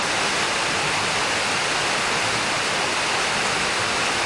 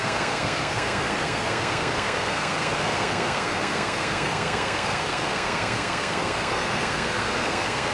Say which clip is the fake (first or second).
second